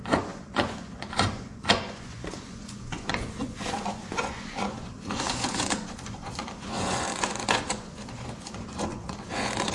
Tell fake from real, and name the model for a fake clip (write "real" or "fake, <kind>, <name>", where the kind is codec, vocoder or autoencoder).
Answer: fake, vocoder, Vocos